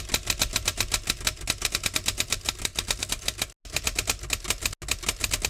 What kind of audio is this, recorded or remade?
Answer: recorded